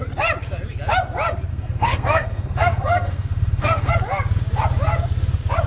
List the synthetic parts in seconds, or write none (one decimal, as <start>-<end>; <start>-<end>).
1.5-3.9